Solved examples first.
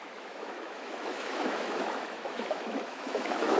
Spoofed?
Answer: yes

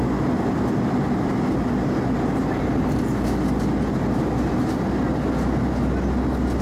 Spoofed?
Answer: no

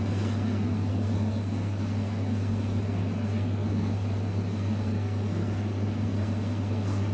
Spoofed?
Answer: yes